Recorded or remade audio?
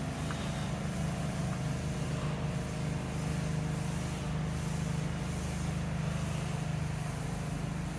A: recorded